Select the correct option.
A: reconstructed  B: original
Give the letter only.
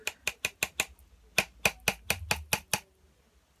B